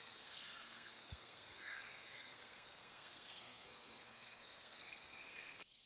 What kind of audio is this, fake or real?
fake